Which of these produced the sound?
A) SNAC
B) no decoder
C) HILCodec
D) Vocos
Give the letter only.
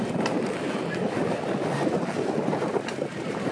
B